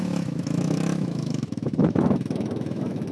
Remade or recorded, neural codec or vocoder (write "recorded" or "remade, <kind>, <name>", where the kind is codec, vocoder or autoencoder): remade, autoencoder, DAC-VAE